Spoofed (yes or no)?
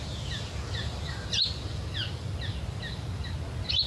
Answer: no